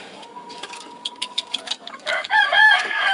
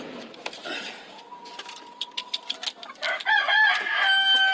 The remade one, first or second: first